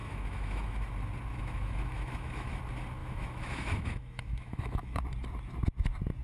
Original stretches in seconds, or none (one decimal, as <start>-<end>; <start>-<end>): 0.9-1.3; 2.6-3.0; 5.0-6.2